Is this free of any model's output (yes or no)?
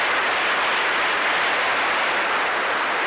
yes